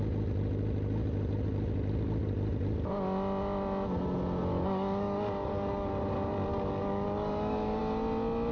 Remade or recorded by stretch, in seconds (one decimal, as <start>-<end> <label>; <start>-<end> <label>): 0.0-4.5 recorded; 4.5-5.9 remade; 5.9-6.5 recorded; 6.5-7.8 remade; 7.8-8.5 recorded